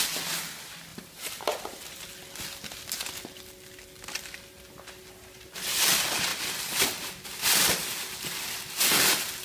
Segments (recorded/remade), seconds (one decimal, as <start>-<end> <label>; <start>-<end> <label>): 0.0-0.9 recorded; 0.9-2.1 remade; 2.1-9.4 recorded